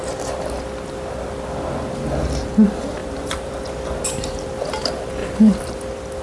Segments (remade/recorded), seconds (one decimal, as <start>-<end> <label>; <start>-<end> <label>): 0.0-3.0 recorded; 3.0-3.5 remade; 3.5-5.2 recorded; 5.2-5.8 remade; 5.8-6.2 recorded